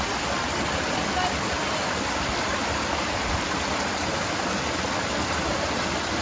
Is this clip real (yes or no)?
yes